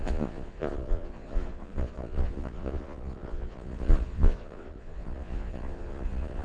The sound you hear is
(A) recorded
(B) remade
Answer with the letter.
B